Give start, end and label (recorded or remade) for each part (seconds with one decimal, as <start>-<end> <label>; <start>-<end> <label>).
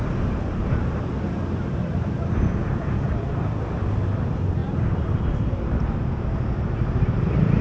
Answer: 0.0-7.6 recorded